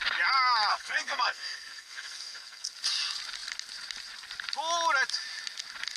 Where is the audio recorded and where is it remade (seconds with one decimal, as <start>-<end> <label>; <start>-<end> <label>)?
0.0-0.7 recorded; 0.7-2.7 remade; 2.7-6.0 recorded